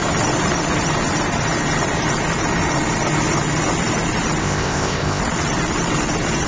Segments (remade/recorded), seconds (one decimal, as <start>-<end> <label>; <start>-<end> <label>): 0.0-4.4 recorded; 4.4-5.2 remade; 5.2-6.5 recorded